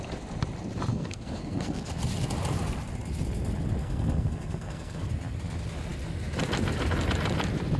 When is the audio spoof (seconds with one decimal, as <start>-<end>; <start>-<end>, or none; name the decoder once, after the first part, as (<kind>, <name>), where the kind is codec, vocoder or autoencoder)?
0.9-1.9 (codec, SNAC); 3.8-5.1